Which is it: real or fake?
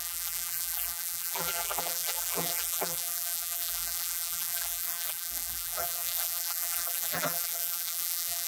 fake